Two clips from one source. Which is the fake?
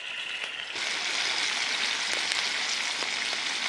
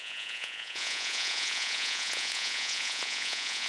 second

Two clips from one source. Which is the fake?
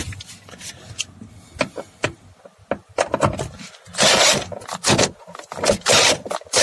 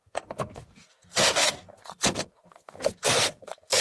second